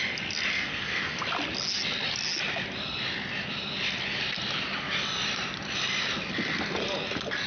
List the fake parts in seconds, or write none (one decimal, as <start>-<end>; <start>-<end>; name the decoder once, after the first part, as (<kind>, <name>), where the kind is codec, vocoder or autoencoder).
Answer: 0.5-1.1 (codec, SNAC)